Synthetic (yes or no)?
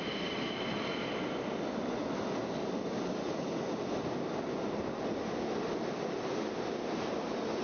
no